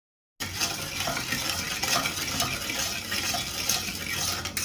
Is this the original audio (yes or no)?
yes